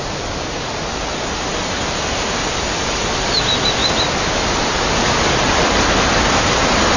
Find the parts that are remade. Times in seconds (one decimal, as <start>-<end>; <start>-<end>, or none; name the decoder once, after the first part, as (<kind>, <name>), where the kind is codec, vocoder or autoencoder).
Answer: none